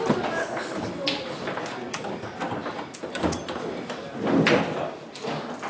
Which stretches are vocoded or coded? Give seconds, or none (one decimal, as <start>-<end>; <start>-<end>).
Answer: 0.4-0.9